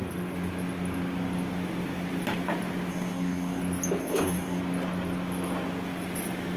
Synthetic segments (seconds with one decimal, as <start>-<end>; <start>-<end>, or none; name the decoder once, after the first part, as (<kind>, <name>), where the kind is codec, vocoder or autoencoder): 2.9-3.6 (codec, DAC); 4.0-4.6